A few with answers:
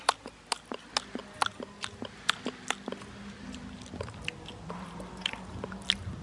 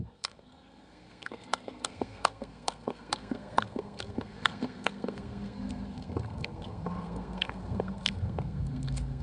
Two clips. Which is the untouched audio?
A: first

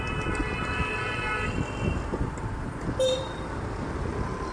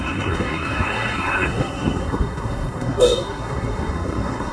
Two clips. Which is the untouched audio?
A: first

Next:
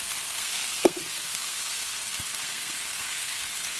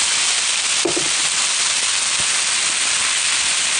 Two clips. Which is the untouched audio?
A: second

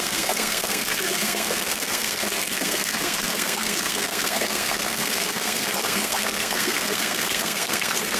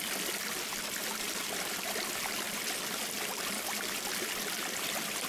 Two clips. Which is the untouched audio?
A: second